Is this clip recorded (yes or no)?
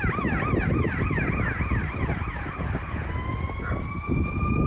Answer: yes